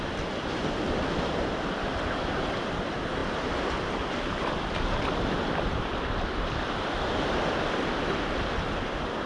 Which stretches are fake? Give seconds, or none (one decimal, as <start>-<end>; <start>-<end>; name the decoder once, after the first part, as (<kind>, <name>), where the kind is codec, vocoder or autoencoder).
none